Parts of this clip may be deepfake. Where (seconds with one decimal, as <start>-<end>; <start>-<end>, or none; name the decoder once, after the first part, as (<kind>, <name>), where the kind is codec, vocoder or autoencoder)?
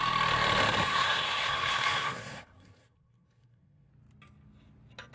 0.8-3.9 (codec, SNAC)